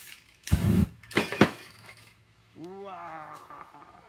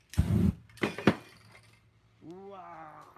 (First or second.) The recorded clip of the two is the second